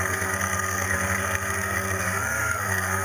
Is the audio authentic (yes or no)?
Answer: no